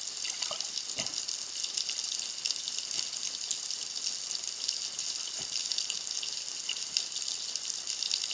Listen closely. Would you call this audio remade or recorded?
recorded